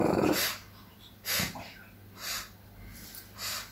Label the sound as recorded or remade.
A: recorded